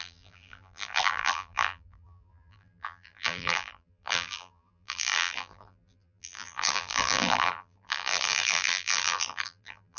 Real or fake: fake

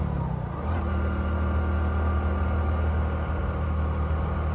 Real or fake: real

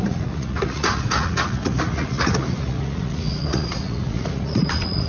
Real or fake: fake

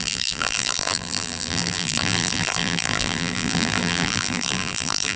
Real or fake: fake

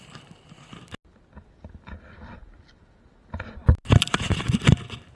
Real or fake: real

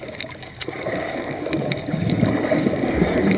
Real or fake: fake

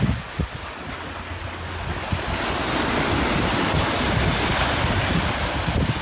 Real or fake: real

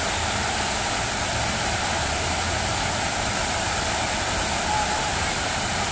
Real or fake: real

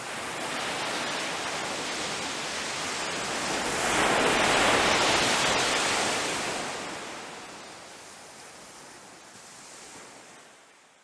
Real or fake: real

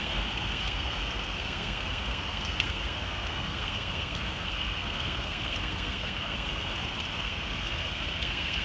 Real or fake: fake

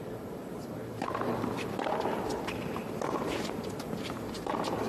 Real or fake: fake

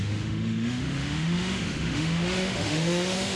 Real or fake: fake